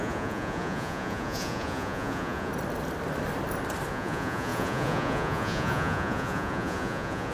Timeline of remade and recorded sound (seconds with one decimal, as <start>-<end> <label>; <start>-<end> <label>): 0.0-2.5 remade; 2.5-3.9 recorded; 3.9-7.3 remade